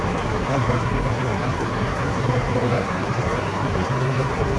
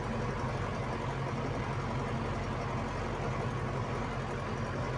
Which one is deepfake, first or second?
first